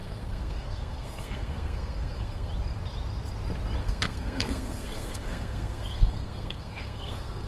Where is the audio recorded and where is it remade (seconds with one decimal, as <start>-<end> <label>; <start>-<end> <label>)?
0.0-2.5 remade; 2.5-3.8 recorded; 3.8-7.5 remade